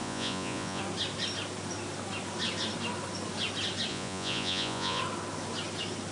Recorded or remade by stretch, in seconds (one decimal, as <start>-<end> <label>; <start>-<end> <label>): 0.0-0.8 remade; 0.8-3.9 recorded; 3.9-5.0 remade; 5.0-6.1 recorded